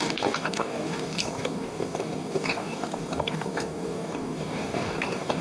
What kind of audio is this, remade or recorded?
remade